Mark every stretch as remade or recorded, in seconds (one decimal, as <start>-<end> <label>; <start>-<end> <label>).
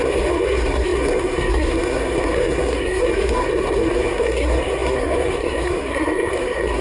0.0-6.8 remade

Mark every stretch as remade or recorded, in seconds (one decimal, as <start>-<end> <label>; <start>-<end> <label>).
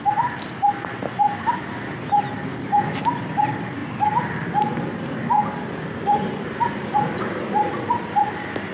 0.0-8.7 recorded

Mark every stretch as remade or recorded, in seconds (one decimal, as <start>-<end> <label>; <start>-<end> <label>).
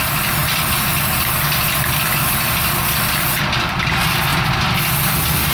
0.0-5.5 recorded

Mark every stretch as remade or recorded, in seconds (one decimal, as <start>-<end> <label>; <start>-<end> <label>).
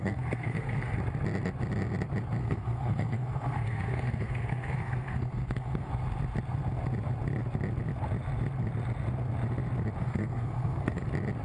0.0-0.9 remade; 0.9-2.4 recorded; 2.4-5.9 remade; 5.9-10.0 recorded; 10.0-11.0 remade; 11.0-11.4 recorded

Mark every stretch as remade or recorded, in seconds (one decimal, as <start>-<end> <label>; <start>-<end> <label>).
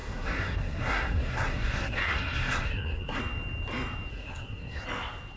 0.0-3.2 remade; 3.2-4.1 recorded; 4.1-4.8 remade; 4.8-5.4 recorded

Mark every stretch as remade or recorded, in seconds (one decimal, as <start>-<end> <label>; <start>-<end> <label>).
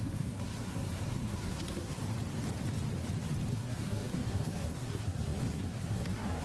0.0-2.0 remade; 2.0-3.5 recorded; 3.5-6.4 remade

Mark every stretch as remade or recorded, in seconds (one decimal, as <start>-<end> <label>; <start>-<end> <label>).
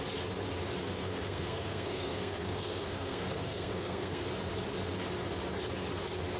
0.0-0.8 recorded; 0.8-4.2 remade; 4.2-6.4 recorded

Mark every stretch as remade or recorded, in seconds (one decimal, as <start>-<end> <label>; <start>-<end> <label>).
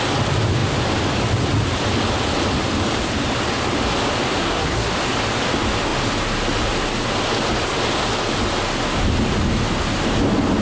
0.0-4.4 recorded; 4.4-4.9 remade; 4.9-10.6 recorded